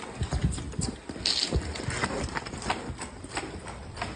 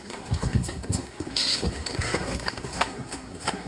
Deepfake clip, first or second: second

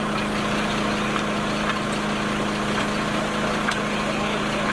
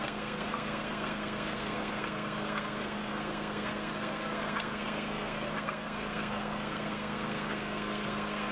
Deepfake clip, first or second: second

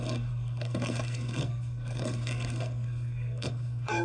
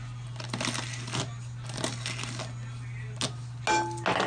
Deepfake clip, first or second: first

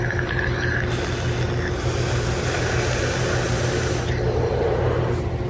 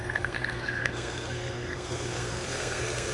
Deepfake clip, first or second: second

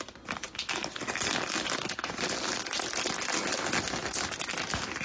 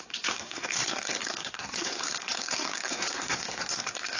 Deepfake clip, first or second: second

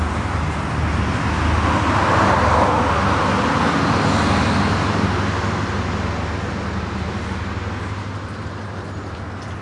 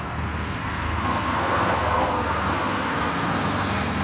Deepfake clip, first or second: second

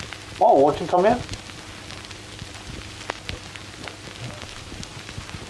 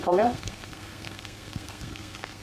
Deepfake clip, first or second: second